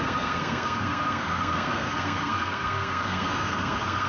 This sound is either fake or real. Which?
fake